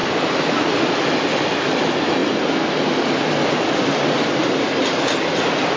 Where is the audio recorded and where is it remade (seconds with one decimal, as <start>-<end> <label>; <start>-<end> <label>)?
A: 0.0-5.8 recorded

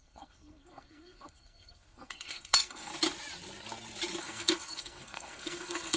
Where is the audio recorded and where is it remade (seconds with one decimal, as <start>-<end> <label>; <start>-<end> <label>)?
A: 0.0-2.9 remade; 2.9-4.2 recorded; 4.2-6.0 remade

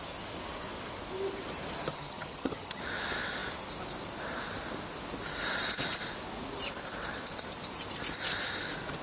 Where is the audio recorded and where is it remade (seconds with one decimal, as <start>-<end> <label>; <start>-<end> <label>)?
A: 0.0-1.9 recorded; 1.9-2.8 remade; 2.8-9.0 recorded

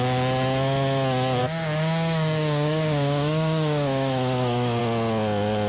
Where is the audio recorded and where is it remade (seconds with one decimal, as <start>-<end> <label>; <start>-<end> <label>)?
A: 0.0-1.4 recorded; 1.4-4.8 remade; 4.8-5.7 recorded

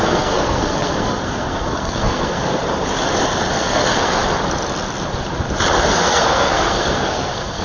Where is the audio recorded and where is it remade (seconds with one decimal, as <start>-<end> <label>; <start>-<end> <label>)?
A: 0.0-2.6 remade; 2.6-3.5 recorded; 3.5-4.2 remade; 4.2-5.9 recorded; 5.9-7.6 remade